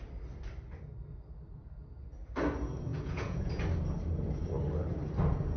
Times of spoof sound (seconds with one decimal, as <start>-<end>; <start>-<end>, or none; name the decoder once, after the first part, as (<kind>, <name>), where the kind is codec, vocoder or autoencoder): 2.9-3.6 (vocoder, Vocos)

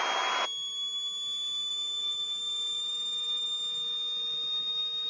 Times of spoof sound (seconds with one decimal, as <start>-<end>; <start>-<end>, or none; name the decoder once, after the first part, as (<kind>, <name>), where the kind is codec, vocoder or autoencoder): 1.7-3.4 (vocoder, BigVGAN v2)

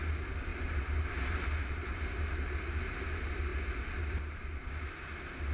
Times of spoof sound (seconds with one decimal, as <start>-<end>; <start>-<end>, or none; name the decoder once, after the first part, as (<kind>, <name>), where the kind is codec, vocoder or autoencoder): none

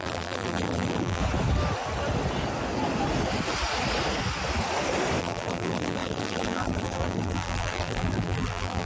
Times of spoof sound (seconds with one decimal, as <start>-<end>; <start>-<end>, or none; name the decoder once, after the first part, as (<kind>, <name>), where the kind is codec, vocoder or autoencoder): 0.0-1.2 (vocoder, BigVGAN v2); 5.2-8.8

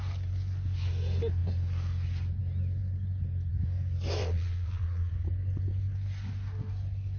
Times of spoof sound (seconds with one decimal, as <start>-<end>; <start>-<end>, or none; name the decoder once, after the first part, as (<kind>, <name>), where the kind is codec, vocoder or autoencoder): 4.2-5.1 (vocoder, Vocos)

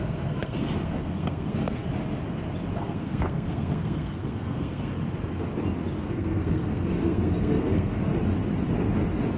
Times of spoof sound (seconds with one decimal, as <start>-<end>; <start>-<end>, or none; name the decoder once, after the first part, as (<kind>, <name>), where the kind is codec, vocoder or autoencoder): 0.0-1.8 (codec, SNAC); 2.7-4.9; 6.0-8.1

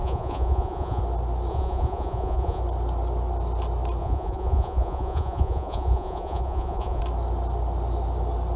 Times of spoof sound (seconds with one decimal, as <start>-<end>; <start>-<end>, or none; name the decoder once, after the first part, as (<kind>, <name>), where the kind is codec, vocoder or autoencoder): 0.0-1.0 (vocoder, Vocos); 1.5-2.6; 4.0-7.0

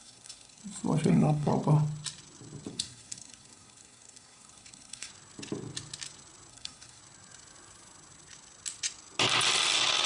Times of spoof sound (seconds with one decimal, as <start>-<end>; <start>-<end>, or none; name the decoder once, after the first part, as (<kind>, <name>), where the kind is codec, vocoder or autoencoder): 0.0-0.6 (codec, SNAC); 1.1-1.5; 2.7-5.1; 6.5-7.0